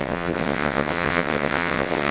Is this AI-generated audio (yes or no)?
yes